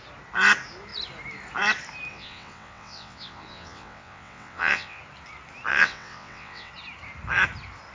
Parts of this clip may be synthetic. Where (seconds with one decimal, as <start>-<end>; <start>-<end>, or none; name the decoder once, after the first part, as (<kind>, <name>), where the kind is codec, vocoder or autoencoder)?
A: 2.1-5.0 (vocoder, WaveNeXt); 5.7-6.7